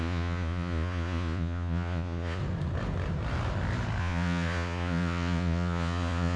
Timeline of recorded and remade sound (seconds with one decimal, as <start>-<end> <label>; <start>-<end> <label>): 0.0-2.4 remade; 2.4-4.0 recorded; 4.0-6.4 remade